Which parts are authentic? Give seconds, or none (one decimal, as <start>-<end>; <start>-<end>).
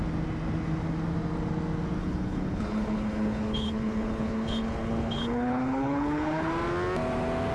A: 0.0-2.0; 6.5-7.5